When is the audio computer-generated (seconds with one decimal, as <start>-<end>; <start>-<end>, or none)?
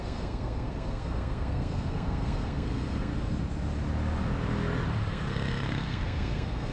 0.0-3.1; 5.1-6.7